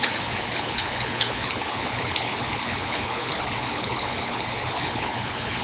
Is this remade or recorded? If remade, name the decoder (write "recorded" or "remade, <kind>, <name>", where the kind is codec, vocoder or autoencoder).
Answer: remade, codec, HILCodec